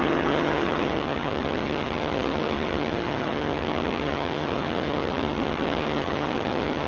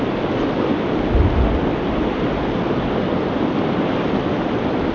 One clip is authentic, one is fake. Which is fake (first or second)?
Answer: first